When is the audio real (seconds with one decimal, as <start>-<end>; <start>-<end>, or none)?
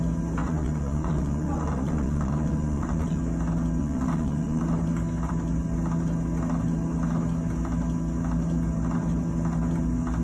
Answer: 0.0-0.4; 3.2-3.8; 4.6-10.2